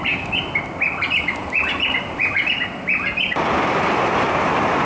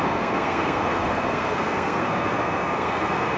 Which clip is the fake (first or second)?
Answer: second